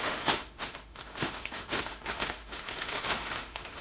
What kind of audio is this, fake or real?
fake